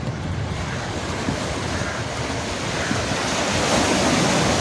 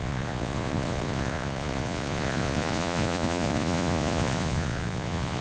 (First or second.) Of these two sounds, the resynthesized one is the second